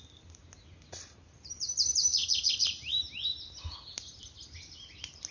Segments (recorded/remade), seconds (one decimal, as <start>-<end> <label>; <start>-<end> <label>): 0.0-5.3 recorded